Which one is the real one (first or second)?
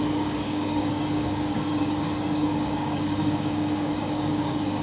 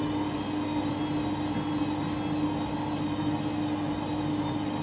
second